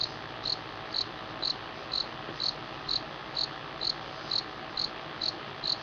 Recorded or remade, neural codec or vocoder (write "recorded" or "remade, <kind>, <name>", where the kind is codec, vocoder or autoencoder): recorded